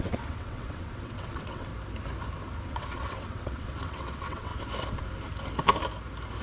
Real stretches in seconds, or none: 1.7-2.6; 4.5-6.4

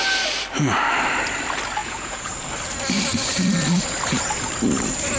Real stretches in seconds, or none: 0.0-1.8; 2.3-5.2

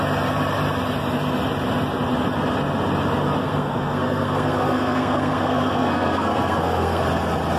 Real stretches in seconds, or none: 0.0-3.4; 7.0-7.6

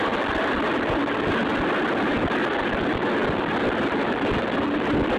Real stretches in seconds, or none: 0.0-3.2; 4.4-5.2